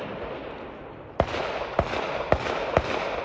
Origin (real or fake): real